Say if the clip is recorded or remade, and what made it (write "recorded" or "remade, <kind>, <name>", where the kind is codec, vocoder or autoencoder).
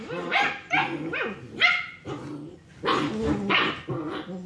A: recorded